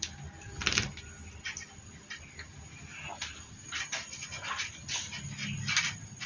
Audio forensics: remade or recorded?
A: recorded